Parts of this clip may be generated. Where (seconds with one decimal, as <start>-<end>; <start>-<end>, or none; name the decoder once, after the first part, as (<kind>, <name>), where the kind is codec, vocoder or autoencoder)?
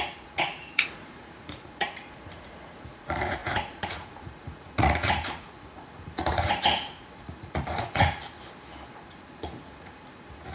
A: 0.0-8.2 (vocoder, Vocos); 8.9-10.5